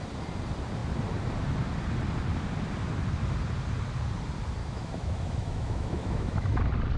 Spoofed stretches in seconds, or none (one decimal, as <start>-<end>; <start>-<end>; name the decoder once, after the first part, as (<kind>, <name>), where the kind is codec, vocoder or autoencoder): 4.6-6.6 (autoencoder, DAC-VAE)